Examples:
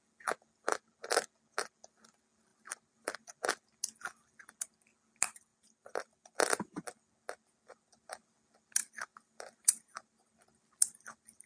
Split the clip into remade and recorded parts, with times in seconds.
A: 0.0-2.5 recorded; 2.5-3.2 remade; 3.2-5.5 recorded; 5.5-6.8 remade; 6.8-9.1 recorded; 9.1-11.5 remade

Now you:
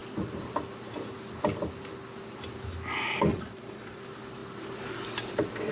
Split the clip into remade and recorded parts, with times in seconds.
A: 0.0-3.3 recorded; 3.3-4.0 remade; 4.0-5.7 recorded

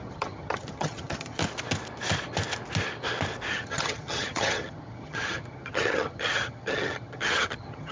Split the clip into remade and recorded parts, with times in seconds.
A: 0.0-1.4 remade; 1.4-3.5 recorded; 3.5-7.9 remade

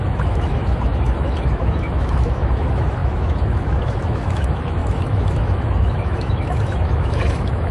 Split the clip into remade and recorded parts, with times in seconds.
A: 0.0-7.7 remade

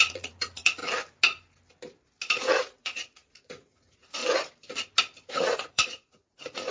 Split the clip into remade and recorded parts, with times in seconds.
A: 0.0-0.8 remade; 0.8-2.4 recorded; 2.4-4.2 remade; 4.2-5.3 recorded; 5.3-6.7 remade

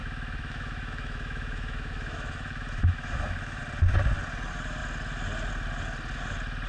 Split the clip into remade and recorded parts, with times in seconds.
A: 0.0-3.6 remade; 3.6-6.7 recorded